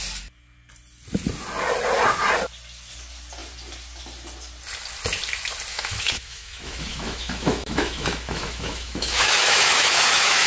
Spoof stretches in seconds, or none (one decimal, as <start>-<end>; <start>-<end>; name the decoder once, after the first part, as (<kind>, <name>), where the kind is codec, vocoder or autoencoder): 5.7-10.5 (autoencoder, DAC-VAE)